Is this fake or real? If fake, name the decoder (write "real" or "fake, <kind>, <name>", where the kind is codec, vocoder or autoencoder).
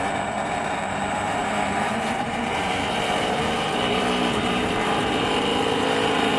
fake, vocoder, BigVGAN v2